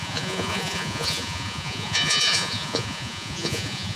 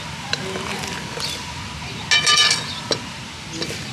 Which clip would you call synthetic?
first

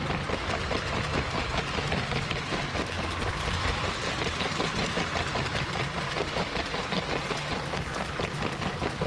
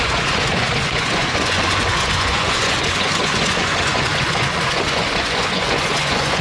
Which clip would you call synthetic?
second